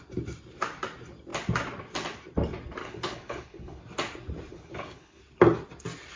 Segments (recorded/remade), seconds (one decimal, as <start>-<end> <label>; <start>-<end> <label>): 0.0-2.8 recorded; 2.8-3.8 remade; 3.8-4.5 recorded; 4.5-5.2 remade; 5.2-6.2 recorded